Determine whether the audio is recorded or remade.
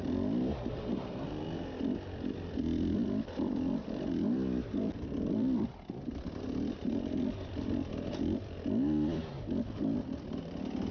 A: remade